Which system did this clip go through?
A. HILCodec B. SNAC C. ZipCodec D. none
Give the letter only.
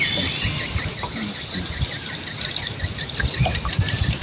D